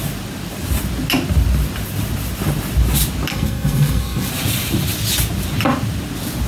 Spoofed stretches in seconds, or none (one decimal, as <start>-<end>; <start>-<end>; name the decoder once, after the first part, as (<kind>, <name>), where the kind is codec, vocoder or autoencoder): 3.3-4.3 (codec, SNAC)